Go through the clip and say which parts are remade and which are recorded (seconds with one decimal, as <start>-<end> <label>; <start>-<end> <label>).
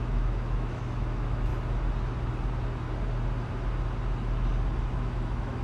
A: 0.0-1.5 remade; 1.5-4.9 recorded; 4.9-5.6 remade